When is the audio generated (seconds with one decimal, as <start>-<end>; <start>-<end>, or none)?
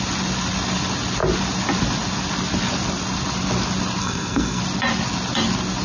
4.0-4.6